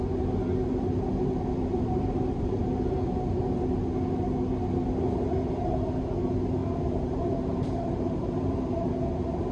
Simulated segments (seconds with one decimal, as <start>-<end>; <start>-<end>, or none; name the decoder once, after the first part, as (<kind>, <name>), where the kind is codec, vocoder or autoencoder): 1.7-2.6 (vocoder, BigVGAN v2); 6.6-8.9